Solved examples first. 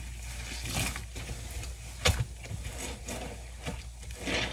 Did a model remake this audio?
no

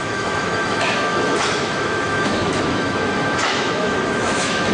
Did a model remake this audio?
yes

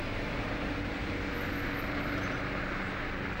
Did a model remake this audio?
no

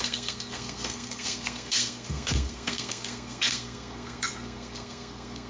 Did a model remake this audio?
yes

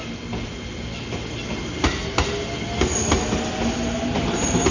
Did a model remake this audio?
no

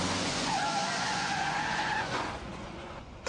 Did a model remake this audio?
yes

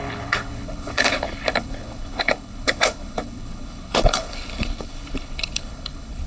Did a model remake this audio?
yes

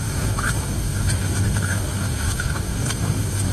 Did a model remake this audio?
yes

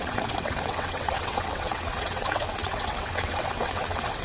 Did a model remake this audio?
yes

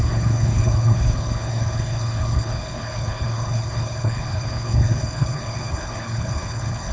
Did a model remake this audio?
yes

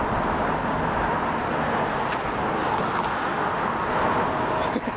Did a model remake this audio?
no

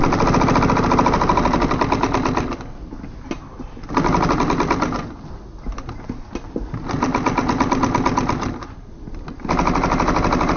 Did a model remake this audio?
no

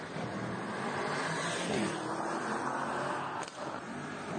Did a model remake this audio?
no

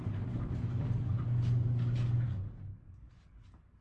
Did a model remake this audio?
yes